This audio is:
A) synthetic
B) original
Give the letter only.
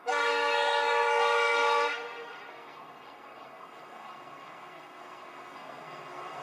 A